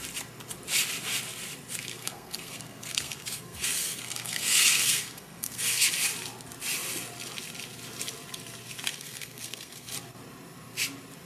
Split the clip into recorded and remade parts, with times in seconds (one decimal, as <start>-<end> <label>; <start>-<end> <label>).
0.0-2.0 recorded; 2.0-5.9 remade; 5.9-8.9 recorded; 8.9-9.9 remade; 9.9-11.3 recorded